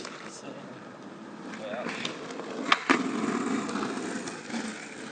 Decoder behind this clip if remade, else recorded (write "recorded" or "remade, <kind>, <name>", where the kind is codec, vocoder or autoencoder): recorded